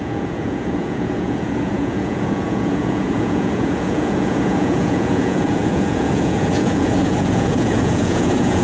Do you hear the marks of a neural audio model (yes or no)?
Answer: yes